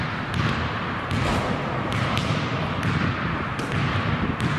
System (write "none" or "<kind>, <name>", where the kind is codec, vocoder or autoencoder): none